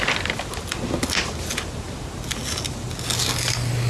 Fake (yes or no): no